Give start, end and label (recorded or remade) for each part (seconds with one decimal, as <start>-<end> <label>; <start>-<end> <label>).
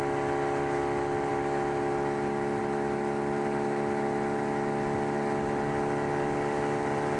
0.0-7.2 recorded